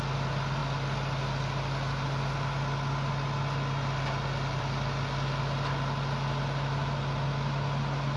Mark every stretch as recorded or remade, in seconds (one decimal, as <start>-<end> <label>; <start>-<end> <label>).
0.0-8.2 recorded